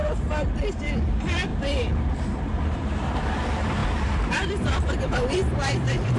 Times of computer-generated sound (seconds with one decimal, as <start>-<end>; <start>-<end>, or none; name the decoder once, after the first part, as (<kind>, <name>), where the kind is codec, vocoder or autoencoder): 1.1-1.5 (vocoder, BigVGAN v2); 2.2-6.2